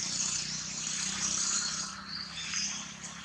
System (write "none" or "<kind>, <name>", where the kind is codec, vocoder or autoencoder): none